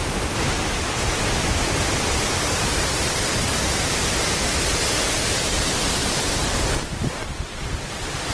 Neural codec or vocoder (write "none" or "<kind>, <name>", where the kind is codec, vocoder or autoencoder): vocoder, BigVGAN v2